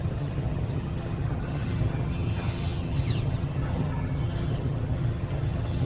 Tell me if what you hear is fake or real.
fake